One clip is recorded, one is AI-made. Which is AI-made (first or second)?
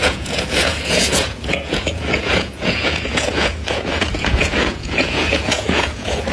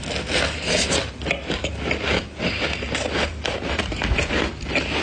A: first